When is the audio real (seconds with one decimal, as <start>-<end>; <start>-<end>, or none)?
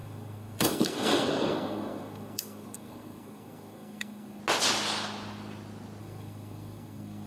4.4-6.0